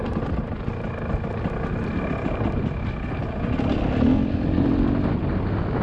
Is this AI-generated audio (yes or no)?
no